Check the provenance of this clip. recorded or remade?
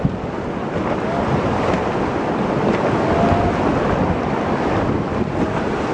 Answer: recorded